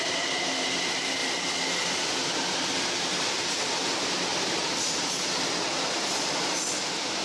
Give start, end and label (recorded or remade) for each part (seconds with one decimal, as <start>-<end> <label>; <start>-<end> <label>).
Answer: 0.0-1.2 remade; 1.2-1.7 recorded; 1.7-4.3 remade; 4.3-6.8 recorded; 6.8-7.2 remade